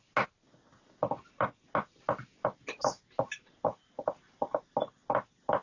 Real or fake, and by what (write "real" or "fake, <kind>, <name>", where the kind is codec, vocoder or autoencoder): real